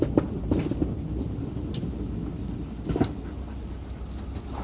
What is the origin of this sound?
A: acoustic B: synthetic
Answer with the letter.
A